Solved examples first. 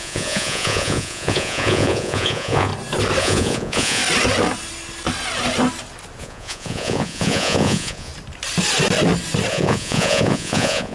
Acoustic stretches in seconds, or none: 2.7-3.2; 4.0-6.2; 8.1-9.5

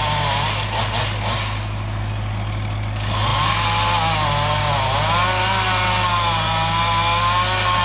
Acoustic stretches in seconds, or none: 0.0-7.8

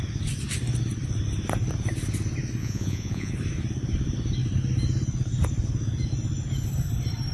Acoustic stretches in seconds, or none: 0.0-2.6; 3.3-7.3

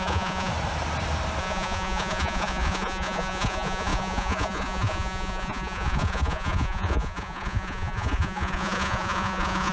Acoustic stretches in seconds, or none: 0.5-1.4

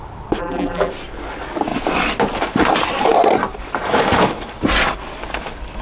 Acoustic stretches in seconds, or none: 0.0-0.4; 0.9-5.8

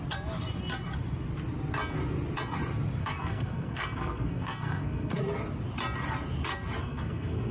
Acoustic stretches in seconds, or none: 0.0-3.0; 5.2-6.8